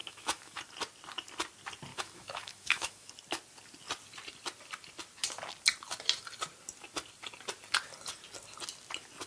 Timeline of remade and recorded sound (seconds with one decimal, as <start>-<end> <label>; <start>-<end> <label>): 0.0-0.6 remade; 0.6-1.9 recorded; 1.9-3.1 remade; 3.1-9.3 recorded

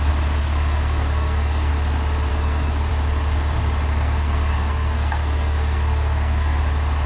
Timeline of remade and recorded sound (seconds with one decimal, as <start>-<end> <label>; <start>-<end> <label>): 0.0-0.4 recorded; 0.4-1.7 remade; 1.7-2.3 recorded; 2.3-2.9 remade; 2.9-3.9 recorded; 3.9-6.6 remade; 6.6-7.1 recorded

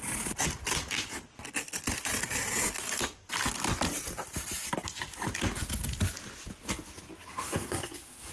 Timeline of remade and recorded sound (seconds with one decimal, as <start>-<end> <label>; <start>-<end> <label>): 0.0-7.3 recorded; 7.3-8.3 remade

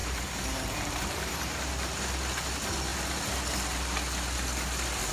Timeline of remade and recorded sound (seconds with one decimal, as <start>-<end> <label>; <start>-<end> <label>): 0.0-1.4 remade; 1.4-5.1 recorded

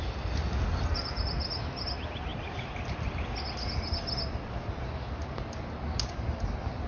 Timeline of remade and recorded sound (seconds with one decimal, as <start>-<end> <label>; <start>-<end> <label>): 0.0-6.9 recorded

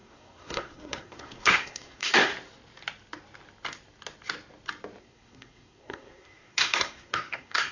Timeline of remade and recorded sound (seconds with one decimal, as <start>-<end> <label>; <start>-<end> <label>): 0.0-2.3 remade; 2.3-5.0 recorded; 5.0-7.7 remade

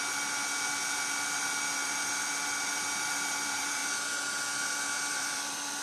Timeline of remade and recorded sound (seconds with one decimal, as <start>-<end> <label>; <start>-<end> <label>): 0.0-0.4 remade; 0.4-1.2 recorded; 1.2-3.8 remade; 3.8-5.1 recorded; 5.1-5.8 remade

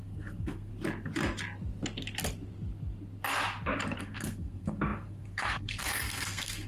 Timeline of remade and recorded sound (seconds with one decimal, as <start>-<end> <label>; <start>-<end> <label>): 0.0-0.7 remade; 0.7-4.0 recorded; 4.0-6.7 remade